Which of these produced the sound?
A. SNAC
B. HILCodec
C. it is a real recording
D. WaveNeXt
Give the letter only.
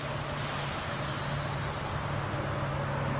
C